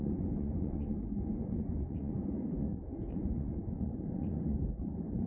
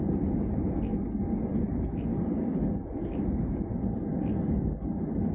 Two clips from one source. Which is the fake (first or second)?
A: first